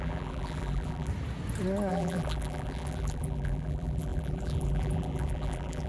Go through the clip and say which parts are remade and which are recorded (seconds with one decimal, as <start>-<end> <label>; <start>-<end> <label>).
0.0-1.1 remade; 1.1-1.9 recorded; 1.9-5.9 remade